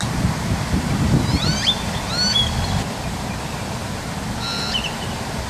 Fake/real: real